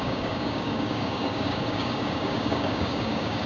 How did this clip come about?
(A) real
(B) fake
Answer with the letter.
B